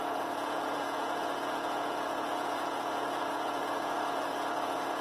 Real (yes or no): no